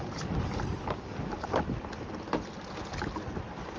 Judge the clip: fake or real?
real